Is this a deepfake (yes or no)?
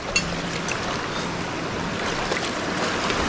no